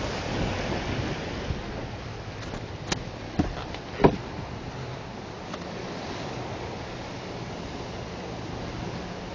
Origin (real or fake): real